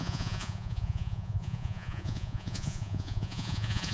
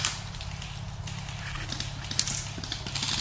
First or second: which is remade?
first